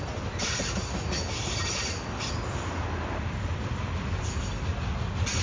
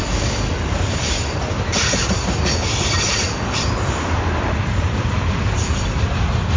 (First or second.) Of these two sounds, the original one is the first